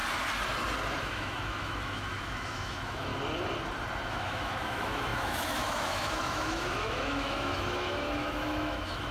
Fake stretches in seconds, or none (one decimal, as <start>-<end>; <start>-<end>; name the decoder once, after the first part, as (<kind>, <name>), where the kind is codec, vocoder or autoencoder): 1.0-3.1 (autoencoder, DAC-VAE); 4.1-9.1